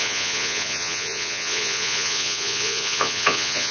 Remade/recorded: remade